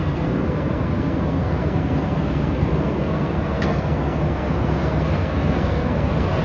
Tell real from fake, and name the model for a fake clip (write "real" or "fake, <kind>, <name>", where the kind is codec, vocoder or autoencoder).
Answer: fake, codec, SNAC